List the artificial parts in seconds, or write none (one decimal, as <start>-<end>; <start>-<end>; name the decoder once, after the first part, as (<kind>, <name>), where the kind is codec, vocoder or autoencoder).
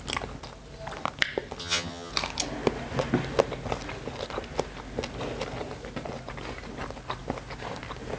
1.6-2.1 (vocoder, HiFi-GAN)